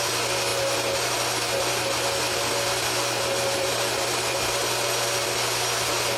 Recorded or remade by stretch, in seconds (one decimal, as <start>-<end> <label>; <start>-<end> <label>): 0.0-6.2 recorded